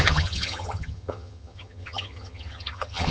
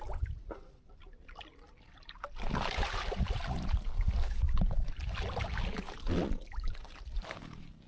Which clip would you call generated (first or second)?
first